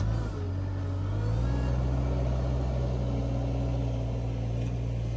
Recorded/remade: recorded